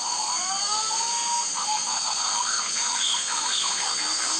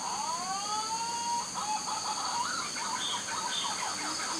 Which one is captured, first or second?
second